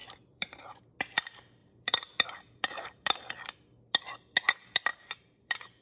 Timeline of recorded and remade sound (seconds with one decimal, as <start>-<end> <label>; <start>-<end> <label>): 0.0-0.8 remade; 0.8-1.6 recorded; 1.6-3.2 remade; 3.2-4.9 recorded; 4.9-5.8 remade